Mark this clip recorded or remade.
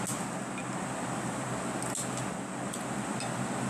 recorded